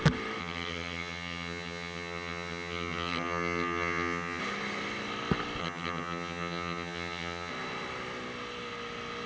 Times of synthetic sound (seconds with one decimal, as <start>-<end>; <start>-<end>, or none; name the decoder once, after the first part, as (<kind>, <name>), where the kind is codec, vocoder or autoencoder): 0.4-4.4 (vocoder, HiFi-GAN); 5.6-7.5